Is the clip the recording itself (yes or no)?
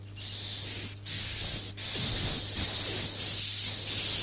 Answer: yes